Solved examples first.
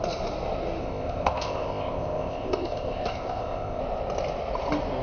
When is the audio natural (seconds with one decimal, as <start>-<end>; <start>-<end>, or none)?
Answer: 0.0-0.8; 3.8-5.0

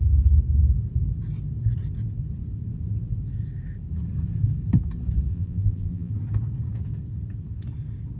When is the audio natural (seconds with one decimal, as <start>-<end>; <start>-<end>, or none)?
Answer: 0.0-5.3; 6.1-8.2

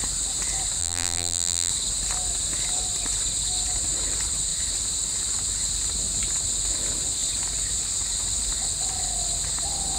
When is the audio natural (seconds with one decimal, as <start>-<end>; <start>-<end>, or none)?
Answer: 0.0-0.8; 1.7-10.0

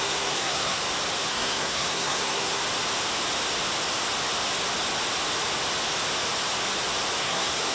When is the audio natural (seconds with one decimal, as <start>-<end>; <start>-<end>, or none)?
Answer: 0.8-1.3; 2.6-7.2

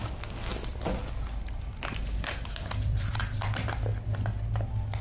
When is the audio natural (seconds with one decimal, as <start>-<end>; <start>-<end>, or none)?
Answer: 0.0-0.5; 3.2-5.0

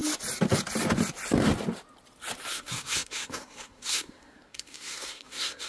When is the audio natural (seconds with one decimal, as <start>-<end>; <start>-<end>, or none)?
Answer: 0.0-2.5